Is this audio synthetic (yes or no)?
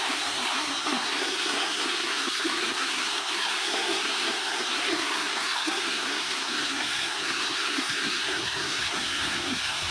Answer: yes